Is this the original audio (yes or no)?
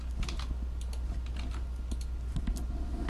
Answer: yes